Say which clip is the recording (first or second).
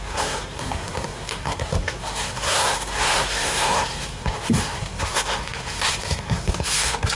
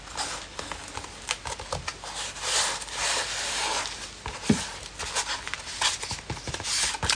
second